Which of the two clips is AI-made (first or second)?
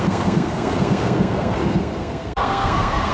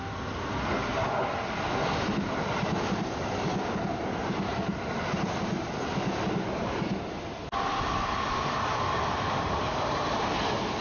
first